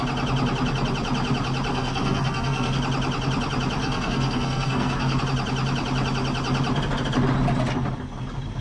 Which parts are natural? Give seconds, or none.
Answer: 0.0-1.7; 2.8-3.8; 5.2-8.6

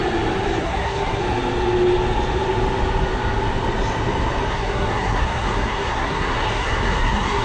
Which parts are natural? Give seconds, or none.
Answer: 0.0-0.6; 1.2-4.5

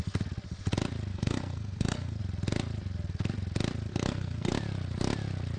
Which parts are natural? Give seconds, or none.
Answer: 0.0-1.1; 2.2-3.9; 4.5-5.6

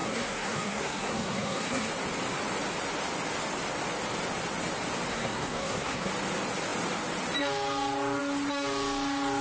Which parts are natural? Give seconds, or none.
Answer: 1.9-5.1; 6.1-9.4